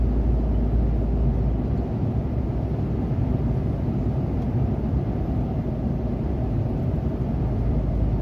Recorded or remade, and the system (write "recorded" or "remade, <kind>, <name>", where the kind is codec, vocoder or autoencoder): recorded